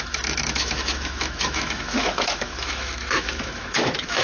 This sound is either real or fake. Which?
fake